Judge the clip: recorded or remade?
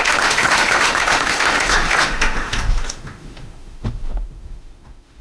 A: remade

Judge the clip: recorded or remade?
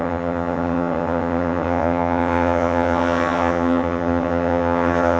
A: remade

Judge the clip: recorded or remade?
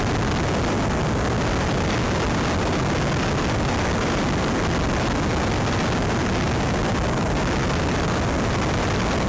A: recorded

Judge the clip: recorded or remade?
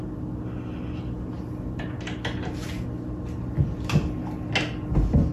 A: recorded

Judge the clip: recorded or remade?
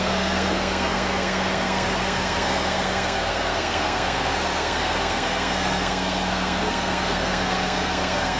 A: remade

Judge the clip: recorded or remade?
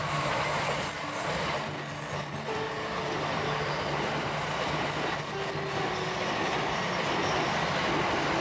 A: recorded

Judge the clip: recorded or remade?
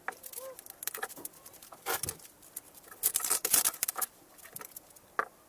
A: remade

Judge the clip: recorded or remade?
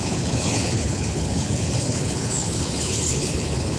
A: remade